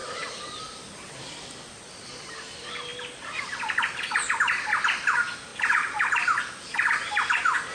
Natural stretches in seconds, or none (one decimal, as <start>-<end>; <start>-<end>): 0.6-2.9; 3.5-5.5; 6.4-7.7